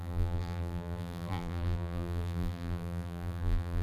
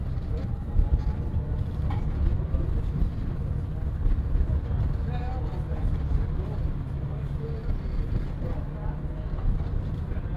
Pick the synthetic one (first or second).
first